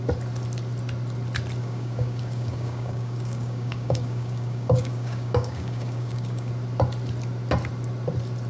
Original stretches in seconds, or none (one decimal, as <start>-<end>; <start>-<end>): 0.0-1.6; 6.5-8.5